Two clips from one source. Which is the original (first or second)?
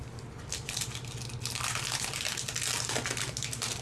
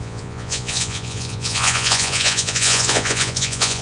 first